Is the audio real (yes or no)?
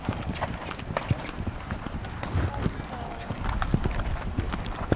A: yes